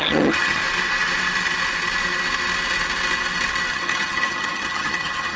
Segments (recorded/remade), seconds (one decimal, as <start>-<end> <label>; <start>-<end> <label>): 0.0-0.6 remade; 0.6-3.7 recorded; 3.7-5.4 remade